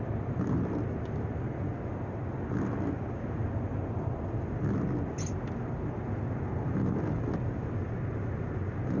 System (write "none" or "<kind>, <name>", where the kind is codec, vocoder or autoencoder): none